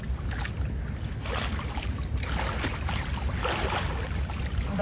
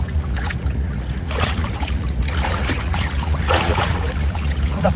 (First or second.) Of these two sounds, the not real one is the second